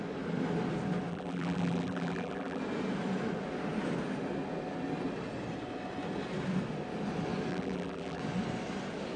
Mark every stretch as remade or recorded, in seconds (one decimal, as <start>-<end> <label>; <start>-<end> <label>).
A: 0.0-1.1 recorded; 1.1-2.6 remade; 2.6-7.5 recorded; 7.5-8.2 remade; 8.2-9.2 recorded